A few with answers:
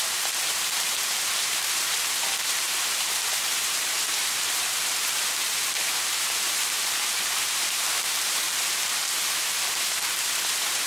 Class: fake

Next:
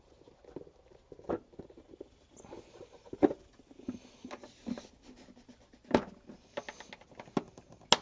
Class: real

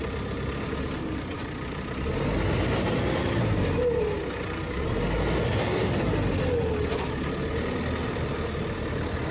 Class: real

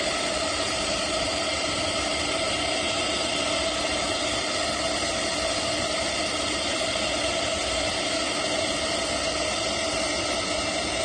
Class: real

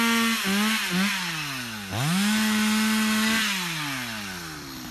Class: real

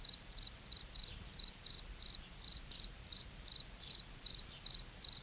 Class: fake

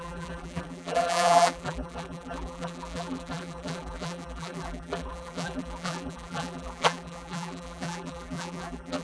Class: fake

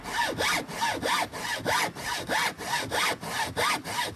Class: real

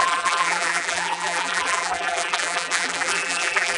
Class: fake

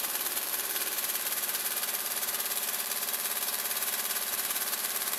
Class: fake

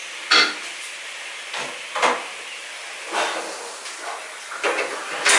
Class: real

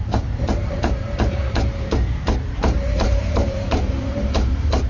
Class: fake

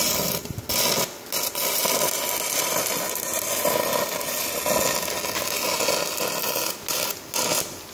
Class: real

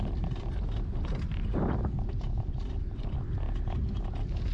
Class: real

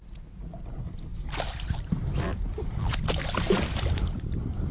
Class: real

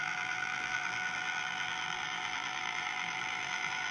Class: fake